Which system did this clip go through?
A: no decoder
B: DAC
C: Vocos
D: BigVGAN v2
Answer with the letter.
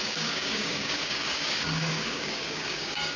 B